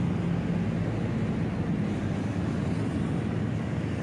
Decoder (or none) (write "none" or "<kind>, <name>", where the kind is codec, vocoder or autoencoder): none